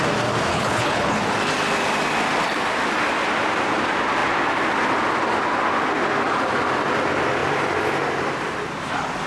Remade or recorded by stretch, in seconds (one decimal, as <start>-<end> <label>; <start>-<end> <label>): 0.0-0.5 recorded; 0.5-1.2 remade; 1.2-9.3 recorded